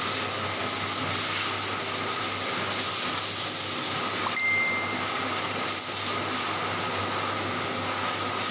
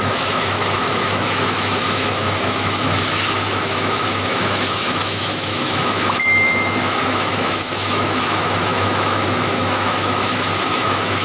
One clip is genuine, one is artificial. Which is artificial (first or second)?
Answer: second